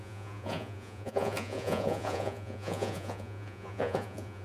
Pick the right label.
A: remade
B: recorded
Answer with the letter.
A